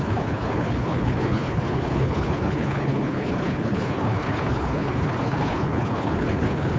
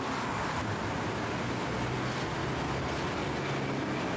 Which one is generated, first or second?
first